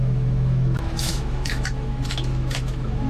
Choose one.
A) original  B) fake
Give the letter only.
B